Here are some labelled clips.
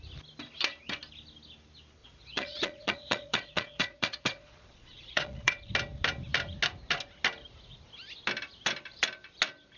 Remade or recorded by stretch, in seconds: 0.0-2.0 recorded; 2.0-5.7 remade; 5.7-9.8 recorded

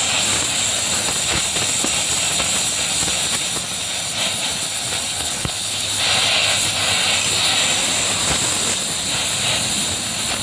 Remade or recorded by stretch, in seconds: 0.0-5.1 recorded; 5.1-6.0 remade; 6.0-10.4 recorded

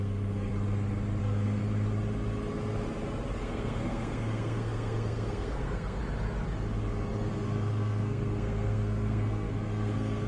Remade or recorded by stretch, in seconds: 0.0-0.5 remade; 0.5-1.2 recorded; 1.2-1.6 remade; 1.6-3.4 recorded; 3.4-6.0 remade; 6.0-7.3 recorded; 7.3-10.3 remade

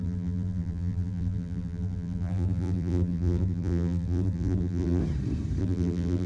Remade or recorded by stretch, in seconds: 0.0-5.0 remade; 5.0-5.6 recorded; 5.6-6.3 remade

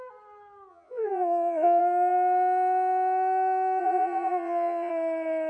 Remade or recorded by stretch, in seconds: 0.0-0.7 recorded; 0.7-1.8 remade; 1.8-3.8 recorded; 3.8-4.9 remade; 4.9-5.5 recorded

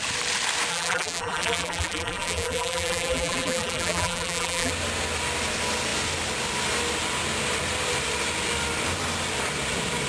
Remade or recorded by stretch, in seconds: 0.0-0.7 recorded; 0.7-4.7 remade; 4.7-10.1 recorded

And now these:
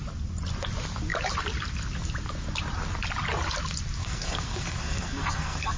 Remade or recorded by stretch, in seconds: 0.0-4.0 recorded; 4.0-5.8 remade

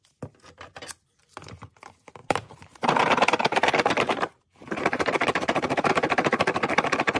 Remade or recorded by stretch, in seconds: 0.0-2.2 recorded; 2.2-5.9 remade; 5.9-7.2 recorded